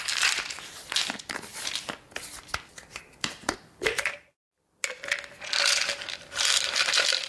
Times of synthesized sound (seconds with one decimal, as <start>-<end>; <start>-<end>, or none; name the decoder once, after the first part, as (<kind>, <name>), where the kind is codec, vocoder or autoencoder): none